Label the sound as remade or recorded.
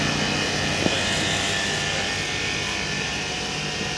recorded